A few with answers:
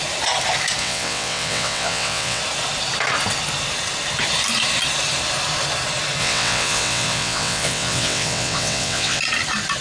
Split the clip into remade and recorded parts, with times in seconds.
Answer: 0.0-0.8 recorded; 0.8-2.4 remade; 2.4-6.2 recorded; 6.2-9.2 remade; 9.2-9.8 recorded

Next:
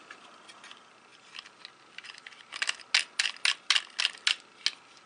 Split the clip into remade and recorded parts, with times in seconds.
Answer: 0.0-5.1 recorded

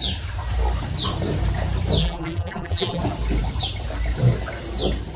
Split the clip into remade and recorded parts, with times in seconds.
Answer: 0.0-2.0 recorded; 2.0-3.0 remade; 3.0-5.2 recorded

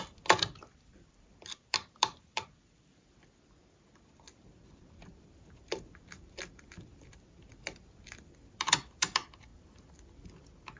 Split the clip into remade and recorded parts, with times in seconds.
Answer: 0.0-9.5 remade; 9.5-10.8 recorded

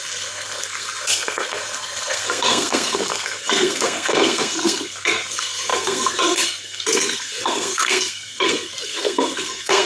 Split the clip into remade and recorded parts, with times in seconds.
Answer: 0.0-9.8 remade

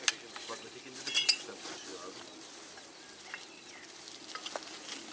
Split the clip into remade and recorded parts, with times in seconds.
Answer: 0.0-5.1 recorded

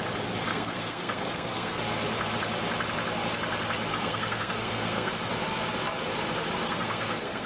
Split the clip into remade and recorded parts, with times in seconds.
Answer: 0.0-0.5 recorded; 0.5-1.8 remade; 1.8-3.9 recorded; 3.9-5.1 remade; 5.1-6.6 recorded; 6.6-7.5 remade